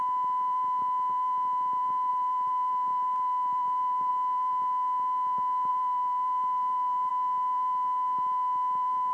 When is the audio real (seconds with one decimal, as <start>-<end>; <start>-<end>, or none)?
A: 0.0-2.1; 4.1-5.7; 7.1-9.1